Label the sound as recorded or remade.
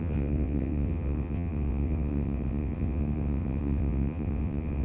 remade